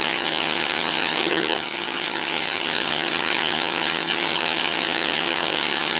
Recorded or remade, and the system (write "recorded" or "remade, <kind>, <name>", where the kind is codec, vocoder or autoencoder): remade, vocoder, HiFi-GAN